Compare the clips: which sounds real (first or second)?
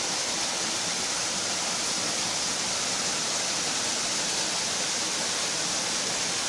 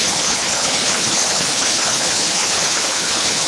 first